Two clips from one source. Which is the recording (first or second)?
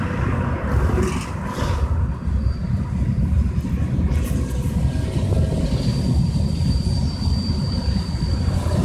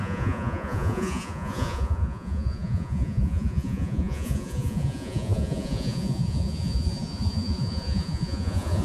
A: first